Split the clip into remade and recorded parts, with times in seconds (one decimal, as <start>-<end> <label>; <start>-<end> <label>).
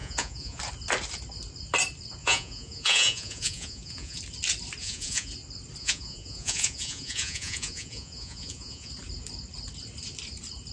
0.0-0.6 remade; 0.6-2.2 recorded; 2.2-4.2 remade; 4.2-4.8 recorded; 4.8-5.3 remade; 5.3-5.8 recorded; 5.8-8.9 remade; 8.9-10.7 recorded